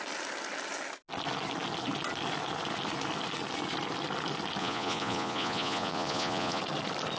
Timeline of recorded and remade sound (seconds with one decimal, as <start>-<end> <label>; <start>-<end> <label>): 0.0-4.6 recorded; 4.6-6.6 remade; 6.6-7.2 recorded